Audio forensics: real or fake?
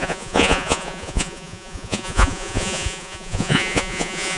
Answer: fake